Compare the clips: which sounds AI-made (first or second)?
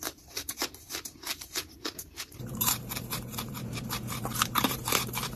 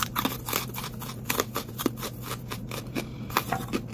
first